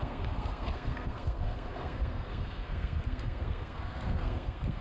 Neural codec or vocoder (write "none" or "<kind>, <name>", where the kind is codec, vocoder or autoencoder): codec, SNAC